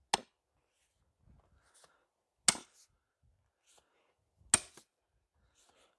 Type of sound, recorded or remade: recorded